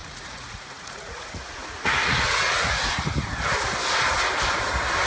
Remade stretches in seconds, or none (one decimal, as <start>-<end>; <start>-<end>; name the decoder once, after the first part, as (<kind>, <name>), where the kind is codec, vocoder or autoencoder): 0.0-3.1 (vocoder, Vocos)